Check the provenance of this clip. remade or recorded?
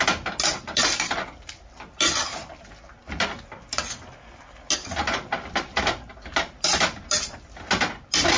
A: recorded